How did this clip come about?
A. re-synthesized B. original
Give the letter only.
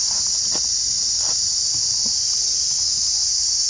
B